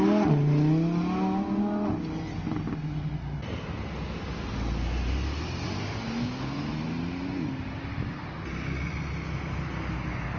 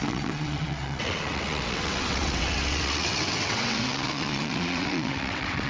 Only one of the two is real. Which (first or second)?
first